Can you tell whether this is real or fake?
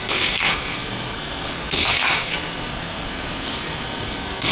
fake